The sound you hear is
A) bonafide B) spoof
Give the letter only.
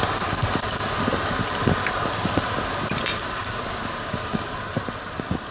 A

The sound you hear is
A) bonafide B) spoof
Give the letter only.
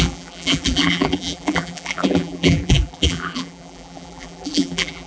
B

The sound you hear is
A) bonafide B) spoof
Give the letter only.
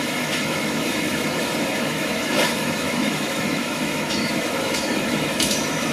B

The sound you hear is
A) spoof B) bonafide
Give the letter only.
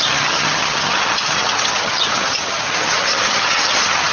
A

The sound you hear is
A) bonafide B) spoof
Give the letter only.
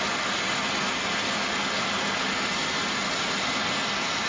A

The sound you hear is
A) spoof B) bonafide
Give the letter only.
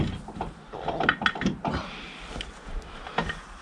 B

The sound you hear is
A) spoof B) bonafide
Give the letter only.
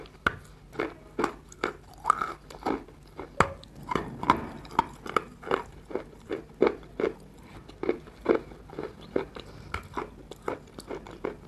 B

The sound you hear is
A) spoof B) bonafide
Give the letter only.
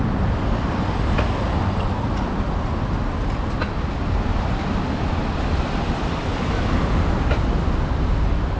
B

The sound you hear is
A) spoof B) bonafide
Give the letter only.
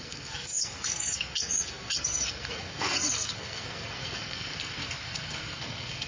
A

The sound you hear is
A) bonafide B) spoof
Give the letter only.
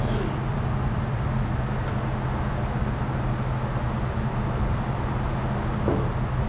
A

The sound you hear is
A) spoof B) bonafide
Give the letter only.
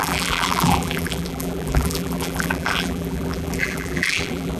A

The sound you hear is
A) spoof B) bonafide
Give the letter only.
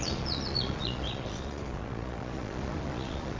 A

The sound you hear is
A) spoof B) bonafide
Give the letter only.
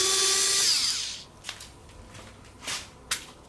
B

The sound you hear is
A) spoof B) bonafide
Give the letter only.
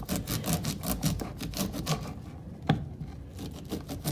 B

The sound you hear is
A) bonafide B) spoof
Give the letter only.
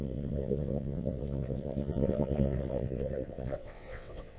B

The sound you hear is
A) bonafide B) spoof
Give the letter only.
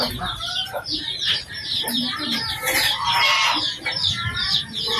B